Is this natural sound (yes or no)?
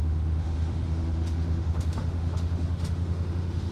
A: no